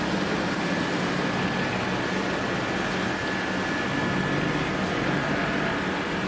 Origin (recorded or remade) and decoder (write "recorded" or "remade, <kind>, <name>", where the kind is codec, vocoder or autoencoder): recorded